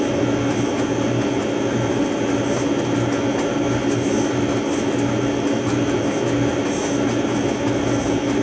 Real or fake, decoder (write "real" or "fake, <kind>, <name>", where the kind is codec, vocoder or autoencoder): real